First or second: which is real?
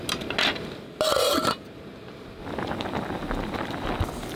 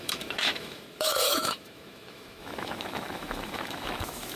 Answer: first